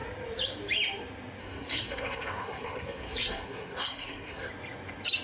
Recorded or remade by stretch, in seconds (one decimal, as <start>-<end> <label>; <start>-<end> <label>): 0.0-1.4 recorded; 1.4-4.5 remade; 4.5-5.2 recorded